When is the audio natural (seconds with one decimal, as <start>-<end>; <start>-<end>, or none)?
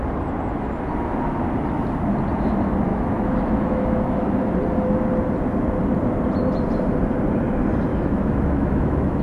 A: 0.0-2.9; 4.3-7.9